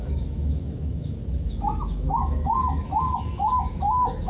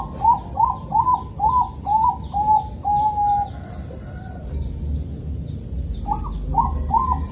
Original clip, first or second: second